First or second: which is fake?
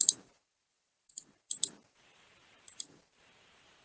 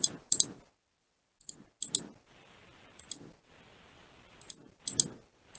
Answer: first